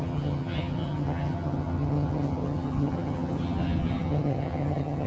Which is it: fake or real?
fake